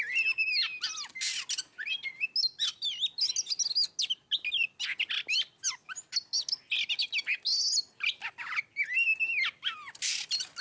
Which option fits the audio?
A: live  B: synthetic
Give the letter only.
A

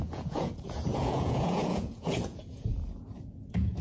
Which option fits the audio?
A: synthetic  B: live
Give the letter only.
A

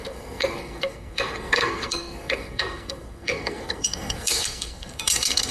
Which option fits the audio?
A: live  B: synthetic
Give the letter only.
B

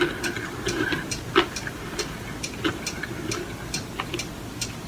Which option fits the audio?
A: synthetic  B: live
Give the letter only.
B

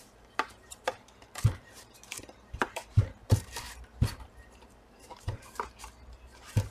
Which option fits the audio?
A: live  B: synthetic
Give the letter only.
B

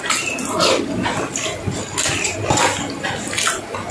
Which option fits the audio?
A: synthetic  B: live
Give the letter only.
B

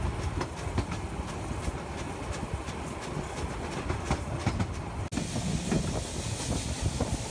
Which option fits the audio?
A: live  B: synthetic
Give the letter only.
A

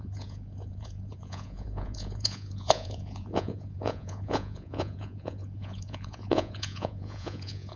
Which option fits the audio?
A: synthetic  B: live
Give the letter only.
A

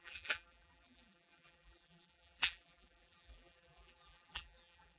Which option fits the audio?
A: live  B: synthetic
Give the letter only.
B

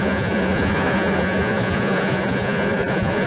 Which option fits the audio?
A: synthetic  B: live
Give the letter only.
A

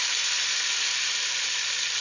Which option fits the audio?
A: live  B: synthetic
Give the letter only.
A